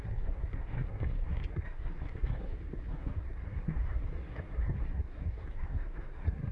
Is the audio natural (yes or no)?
no